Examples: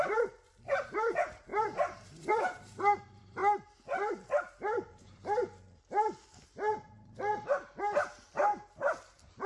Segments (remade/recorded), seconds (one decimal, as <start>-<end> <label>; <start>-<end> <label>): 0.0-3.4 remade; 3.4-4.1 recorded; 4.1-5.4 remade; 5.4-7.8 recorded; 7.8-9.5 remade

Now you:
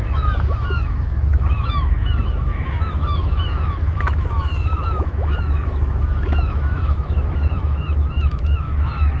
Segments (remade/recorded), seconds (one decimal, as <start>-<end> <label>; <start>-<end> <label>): 0.0-9.2 remade

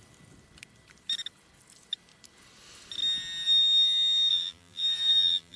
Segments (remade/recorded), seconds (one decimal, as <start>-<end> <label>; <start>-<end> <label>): 0.0-4.3 recorded; 4.3-5.6 remade

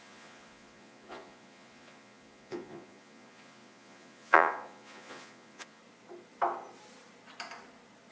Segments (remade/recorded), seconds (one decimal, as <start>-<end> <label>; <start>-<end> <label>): 0.0-5.8 remade; 5.8-8.1 recorded

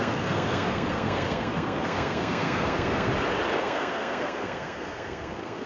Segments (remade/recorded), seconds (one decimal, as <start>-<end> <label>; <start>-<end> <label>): 0.0-3.1 remade; 3.1-3.6 recorded; 3.6-5.7 remade